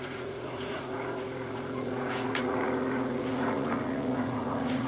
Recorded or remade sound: remade